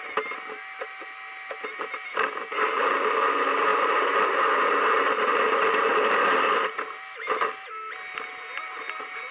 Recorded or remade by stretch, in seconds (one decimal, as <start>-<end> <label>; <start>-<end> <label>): 0.0-9.3 recorded